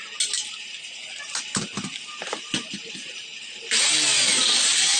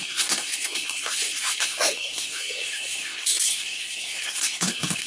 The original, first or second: first